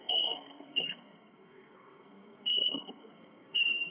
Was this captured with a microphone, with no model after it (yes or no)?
no